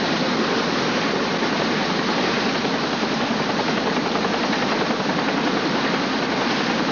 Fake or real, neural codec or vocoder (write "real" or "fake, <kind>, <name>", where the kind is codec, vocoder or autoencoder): real